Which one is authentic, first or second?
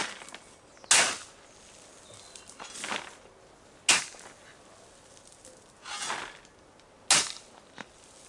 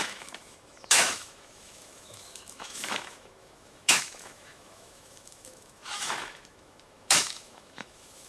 first